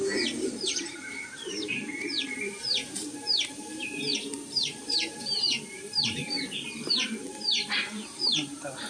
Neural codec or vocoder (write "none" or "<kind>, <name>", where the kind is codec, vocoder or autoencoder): vocoder, BigVGAN v2